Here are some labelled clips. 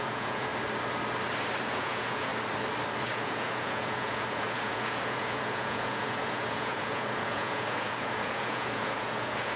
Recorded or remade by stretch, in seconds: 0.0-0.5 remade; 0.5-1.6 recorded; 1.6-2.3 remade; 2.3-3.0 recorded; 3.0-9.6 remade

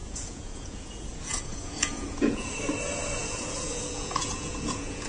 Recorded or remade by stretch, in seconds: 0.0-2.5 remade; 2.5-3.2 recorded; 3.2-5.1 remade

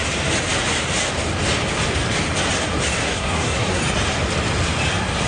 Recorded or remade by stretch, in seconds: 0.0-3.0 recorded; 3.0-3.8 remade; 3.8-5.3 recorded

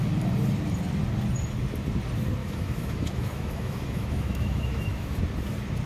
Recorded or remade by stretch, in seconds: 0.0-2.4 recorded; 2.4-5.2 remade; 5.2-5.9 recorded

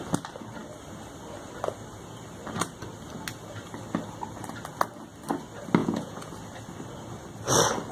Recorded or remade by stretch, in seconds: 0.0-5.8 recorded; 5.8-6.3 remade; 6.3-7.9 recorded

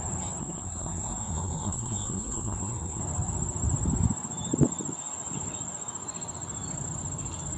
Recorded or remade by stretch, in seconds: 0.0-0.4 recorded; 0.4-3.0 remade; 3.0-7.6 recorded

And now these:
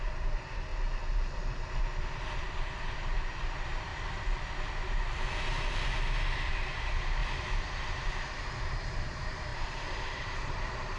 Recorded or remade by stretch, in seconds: 0.0-0.7 remade; 0.7-2.5 recorded; 2.5-3.9 remade; 3.9-6.6 recorded; 6.6-7.2 remade; 7.2-8.5 recorded; 8.5-11.0 remade

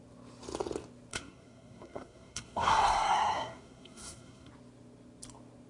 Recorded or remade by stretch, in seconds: 0.0-1.1 recorded; 1.1-4.5 remade; 4.5-5.7 recorded